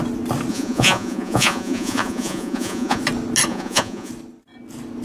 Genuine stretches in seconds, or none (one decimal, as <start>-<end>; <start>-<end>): 0.0-0.5; 3.0-3.5; 4.1-5.0

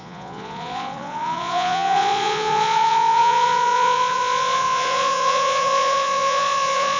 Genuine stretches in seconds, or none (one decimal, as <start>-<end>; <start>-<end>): none

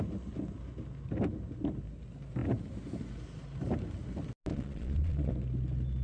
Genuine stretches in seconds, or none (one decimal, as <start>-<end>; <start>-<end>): 0.0-4.5; 5.3-6.0

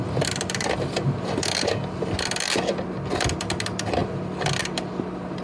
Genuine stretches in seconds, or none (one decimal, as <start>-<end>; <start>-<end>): 0.0-5.4

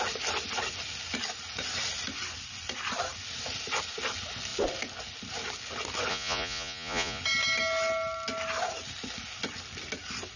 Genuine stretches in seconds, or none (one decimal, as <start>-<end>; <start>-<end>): 0.0-6.1; 7.2-10.4

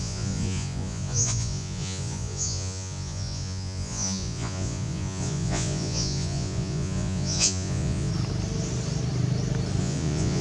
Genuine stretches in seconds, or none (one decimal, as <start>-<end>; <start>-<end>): 8.1-9.8

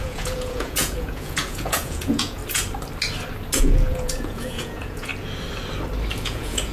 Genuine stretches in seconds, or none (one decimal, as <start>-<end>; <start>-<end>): 2.4-3.6; 5.1-6.2

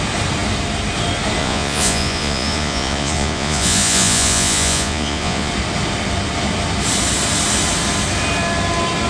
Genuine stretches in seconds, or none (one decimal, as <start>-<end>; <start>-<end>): 0.0-1.4; 5.5-9.1